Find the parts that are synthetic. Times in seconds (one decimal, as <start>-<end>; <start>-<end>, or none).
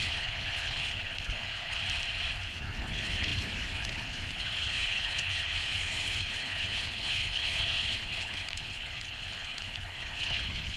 0.0-1.8; 2.4-10.8